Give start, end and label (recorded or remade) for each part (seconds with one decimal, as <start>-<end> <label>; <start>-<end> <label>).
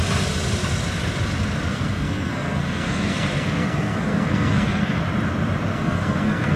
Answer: 0.0-1.7 recorded; 1.7-5.0 remade; 5.0-5.7 recorded; 5.7-6.6 remade